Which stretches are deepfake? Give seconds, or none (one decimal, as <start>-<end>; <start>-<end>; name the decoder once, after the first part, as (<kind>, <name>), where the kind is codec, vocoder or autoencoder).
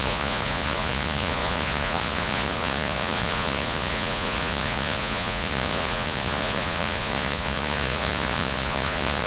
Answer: 0.0-9.3 (vocoder, Vocos)